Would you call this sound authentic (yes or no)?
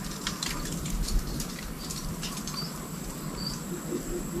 yes